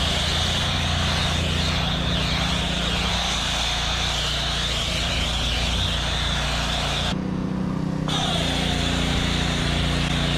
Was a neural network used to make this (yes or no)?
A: no